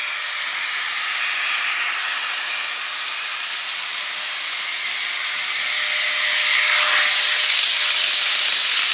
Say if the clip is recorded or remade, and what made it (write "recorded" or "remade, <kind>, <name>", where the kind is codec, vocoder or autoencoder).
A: recorded